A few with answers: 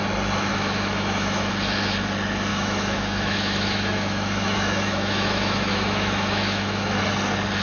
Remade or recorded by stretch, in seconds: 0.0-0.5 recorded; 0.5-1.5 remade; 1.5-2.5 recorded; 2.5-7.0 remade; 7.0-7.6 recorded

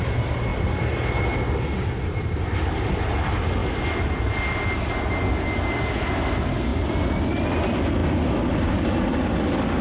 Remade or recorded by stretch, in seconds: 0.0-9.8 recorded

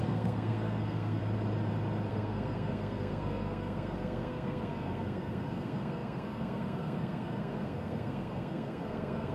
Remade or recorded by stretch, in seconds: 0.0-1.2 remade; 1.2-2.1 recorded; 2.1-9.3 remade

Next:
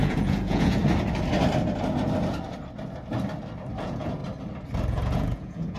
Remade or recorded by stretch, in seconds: 0.0-0.8 remade; 0.8-3.8 recorded; 3.8-4.2 remade; 4.2-4.9 recorded; 4.9-5.8 remade

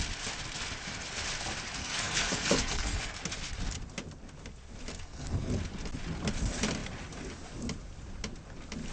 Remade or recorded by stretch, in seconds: 0.0-1.8 recorded; 1.8-3.2 remade; 3.2-4.9 recorded; 4.9-5.5 remade; 5.5-8.9 recorded

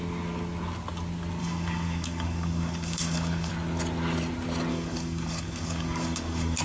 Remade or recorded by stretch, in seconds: 0.0-1.4 recorded; 1.4-3.5 remade; 3.5-4.7 recorded; 4.7-6.6 remade

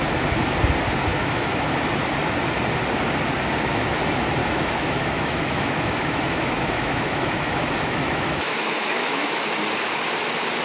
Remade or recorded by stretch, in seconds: 0.0-1.1 recorded; 1.1-1.6 remade; 1.6-4.4 recorded; 4.4-9.4 remade; 9.4-10.6 recorded